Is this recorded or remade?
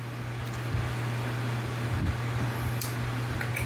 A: recorded